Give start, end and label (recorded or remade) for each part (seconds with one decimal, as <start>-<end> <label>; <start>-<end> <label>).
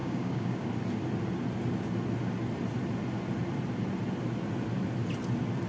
0.0-0.7 remade; 0.7-5.7 recorded